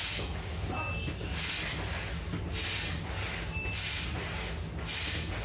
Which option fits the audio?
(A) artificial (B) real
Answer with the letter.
B